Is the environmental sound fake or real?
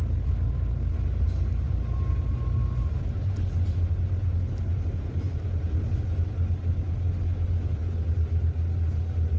real